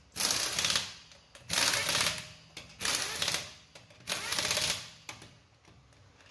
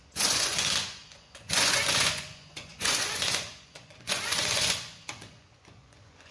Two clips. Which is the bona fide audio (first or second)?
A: first